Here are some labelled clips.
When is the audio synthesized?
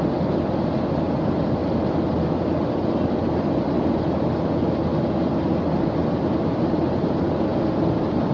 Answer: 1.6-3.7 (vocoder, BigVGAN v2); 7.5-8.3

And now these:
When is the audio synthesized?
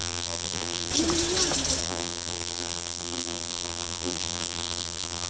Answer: 0.0-0.9 (vocoder, BigVGAN v2); 1.8-5.3